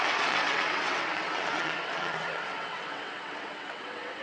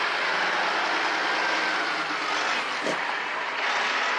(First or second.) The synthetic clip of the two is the first